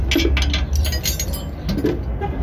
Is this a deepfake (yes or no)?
no